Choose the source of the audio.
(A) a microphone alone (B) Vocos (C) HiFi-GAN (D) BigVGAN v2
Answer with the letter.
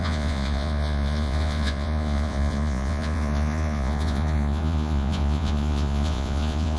B